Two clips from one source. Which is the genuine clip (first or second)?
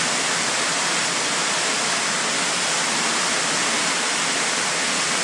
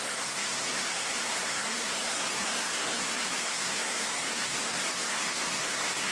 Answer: first